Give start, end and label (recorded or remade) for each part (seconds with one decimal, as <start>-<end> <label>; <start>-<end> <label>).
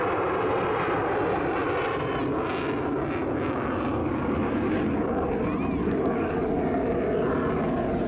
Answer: 0.0-4.0 recorded; 4.0-4.7 remade; 4.7-5.8 recorded; 5.8-6.5 remade; 6.5-8.1 recorded